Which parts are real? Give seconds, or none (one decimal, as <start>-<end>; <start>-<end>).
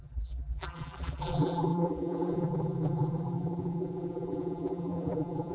none